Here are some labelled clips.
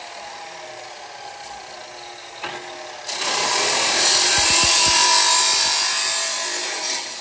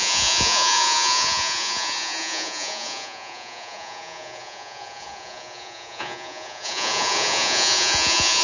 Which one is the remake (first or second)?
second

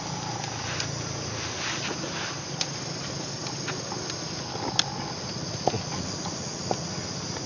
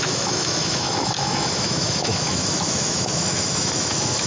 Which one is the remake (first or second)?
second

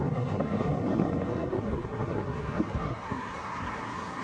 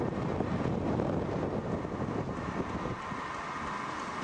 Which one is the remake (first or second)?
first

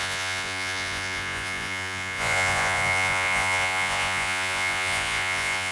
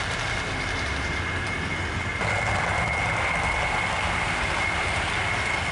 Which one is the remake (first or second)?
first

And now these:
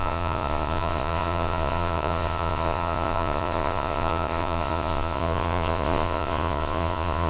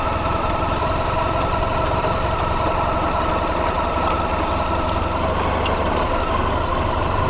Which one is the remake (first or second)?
first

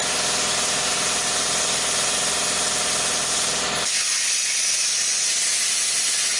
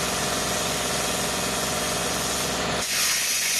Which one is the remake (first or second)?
second